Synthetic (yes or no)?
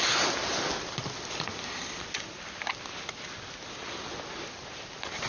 no